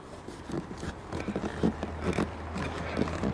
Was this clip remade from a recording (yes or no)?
no